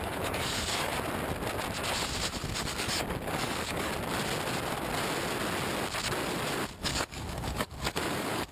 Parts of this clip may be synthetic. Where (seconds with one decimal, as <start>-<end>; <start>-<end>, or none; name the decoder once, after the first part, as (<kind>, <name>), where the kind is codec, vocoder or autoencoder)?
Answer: 0.0-0.9 (codec, DAC); 2.6-3.9; 6.8-8.5